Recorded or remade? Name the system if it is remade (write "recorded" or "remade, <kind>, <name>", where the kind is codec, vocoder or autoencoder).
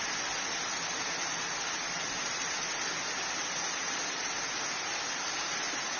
recorded